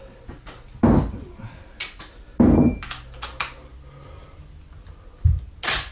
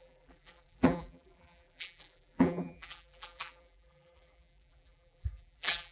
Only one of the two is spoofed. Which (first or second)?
second